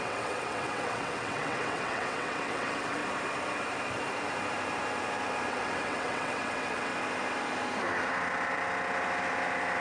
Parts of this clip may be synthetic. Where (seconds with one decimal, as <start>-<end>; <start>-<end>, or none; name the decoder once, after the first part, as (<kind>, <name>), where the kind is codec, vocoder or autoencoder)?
0.0-3.0 (vocoder, WaveNeXt); 5.5-6.9